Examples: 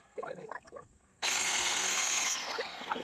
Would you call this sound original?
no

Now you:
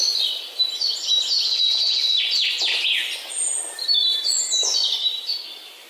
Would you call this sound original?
yes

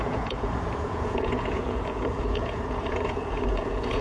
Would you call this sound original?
no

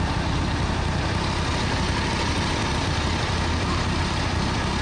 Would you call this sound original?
yes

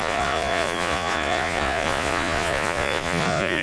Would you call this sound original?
no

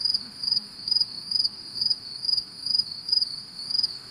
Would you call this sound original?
no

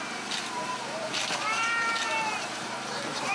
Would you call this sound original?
no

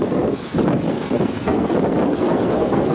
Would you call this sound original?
no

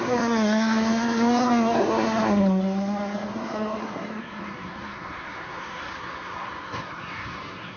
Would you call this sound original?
no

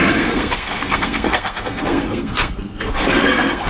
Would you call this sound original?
no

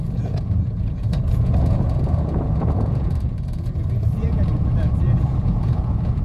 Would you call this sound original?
no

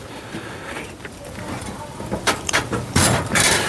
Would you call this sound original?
no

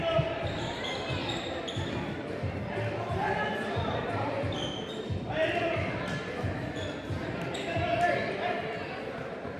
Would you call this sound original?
no